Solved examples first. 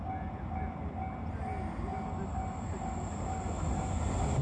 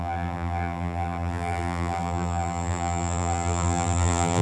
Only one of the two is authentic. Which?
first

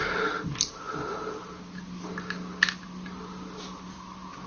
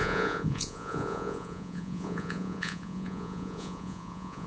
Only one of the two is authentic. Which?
first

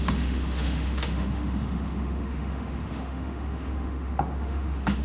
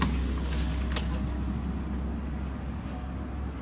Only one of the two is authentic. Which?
second